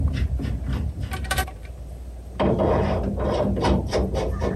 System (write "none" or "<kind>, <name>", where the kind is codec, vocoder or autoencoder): vocoder, BigVGAN v2